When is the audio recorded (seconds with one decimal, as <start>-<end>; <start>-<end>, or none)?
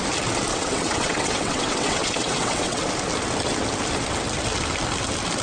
0.0-0.5; 2.9-5.4